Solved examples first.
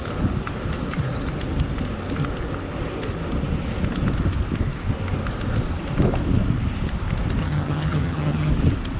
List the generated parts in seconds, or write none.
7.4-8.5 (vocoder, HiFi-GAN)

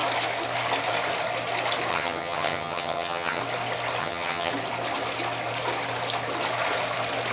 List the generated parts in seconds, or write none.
1.9-3.4 (vocoder, HiFi-GAN); 4.0-4.5

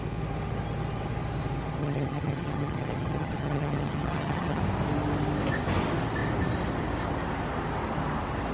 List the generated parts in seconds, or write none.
1.8-4.6 (vocoder, HiFi-GAN)

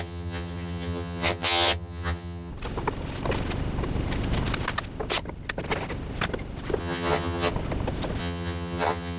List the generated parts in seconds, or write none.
0.0-2.5 (vocoder, HiFi-GAN); 6.8-7.5; 8.2-9.2

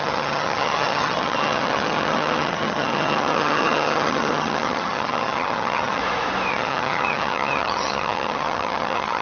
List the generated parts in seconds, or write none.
0.0-6.0 (vocoder, HiFi-GAN); 6.5-9.2

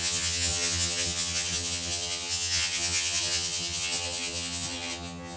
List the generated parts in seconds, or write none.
0.0-5.4 (vocoder, HiFi-GAN)

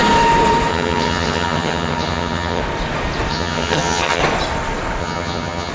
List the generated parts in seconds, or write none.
0.7-2.6 (vocoder, HiFi-GAN); 3.3-4.2; 5.0-5.7